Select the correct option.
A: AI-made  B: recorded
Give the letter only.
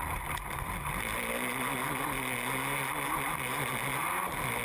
B